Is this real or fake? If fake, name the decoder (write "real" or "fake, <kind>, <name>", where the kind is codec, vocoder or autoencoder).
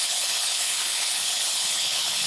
fake, codec, HILCodec